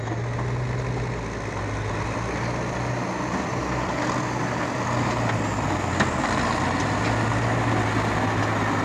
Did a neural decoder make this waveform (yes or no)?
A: no